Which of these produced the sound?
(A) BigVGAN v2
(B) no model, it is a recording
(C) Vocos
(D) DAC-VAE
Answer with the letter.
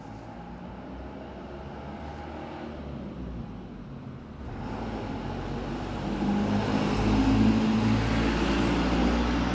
B